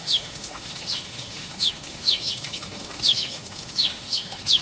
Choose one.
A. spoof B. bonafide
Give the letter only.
A